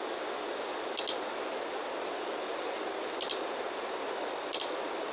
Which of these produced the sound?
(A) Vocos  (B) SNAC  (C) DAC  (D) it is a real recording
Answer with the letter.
D